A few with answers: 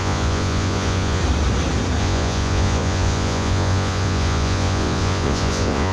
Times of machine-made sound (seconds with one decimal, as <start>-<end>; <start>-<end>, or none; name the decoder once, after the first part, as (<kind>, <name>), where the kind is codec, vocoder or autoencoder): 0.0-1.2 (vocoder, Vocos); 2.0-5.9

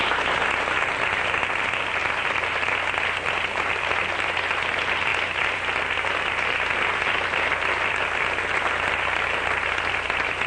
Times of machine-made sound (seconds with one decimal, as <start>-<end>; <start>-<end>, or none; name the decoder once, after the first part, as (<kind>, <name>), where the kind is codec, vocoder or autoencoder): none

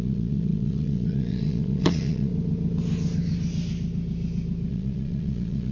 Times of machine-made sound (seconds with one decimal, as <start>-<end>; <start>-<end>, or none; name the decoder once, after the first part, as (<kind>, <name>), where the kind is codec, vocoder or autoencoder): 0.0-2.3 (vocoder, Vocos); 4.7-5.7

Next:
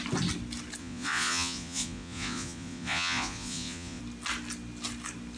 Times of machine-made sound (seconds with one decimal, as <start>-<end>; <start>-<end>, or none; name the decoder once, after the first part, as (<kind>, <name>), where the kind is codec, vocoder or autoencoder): 0.8-4.0 (vocoder, Vocos)

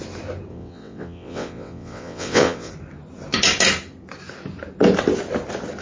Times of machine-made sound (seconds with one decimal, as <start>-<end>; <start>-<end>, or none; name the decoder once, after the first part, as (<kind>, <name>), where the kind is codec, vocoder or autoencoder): 0.5-2.7 (vocoder, WaveNeXt)

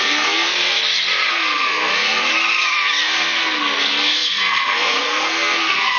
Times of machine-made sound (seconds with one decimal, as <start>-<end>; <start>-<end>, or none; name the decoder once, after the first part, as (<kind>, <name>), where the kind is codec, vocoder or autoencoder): 0.0-0.8 (codec, SNAC); 1.3-2.2; 3.0-6.0